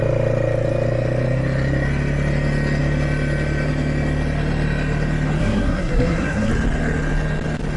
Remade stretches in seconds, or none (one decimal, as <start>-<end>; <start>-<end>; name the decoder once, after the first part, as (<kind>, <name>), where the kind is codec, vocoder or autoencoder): 5.4-6.5 (codec, SNAC)